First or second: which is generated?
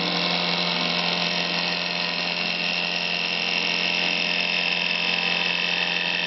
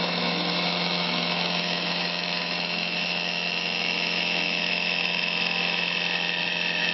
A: second